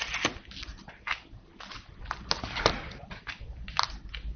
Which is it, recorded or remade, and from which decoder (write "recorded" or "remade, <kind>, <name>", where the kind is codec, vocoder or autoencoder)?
recorded